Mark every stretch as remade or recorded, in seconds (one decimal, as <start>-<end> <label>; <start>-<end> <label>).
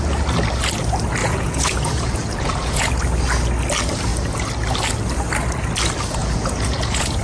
0.0-1.2 recorded; 1.2-2.9 remade; 2.9-6.2 recorded; 6.2-7.2 remade